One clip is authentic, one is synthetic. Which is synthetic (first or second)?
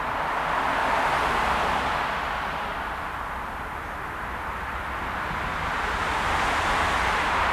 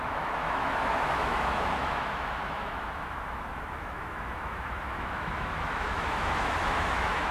second